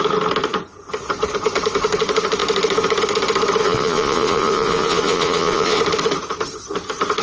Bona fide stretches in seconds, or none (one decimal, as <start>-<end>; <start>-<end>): 0.0-3.6; 5.8-7.2